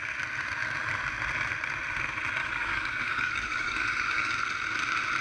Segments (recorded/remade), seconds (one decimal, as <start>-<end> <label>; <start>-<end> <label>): 0.0-2.4 recorded; 2.4-4.3 remade; 4.3-5.2 recorded